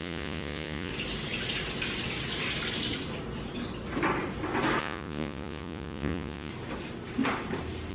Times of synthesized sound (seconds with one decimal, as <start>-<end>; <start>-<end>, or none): 0.0-0.9; 4.8-6.5